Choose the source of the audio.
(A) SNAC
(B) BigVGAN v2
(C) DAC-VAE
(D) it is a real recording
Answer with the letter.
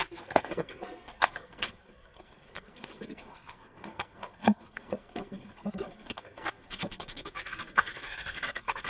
A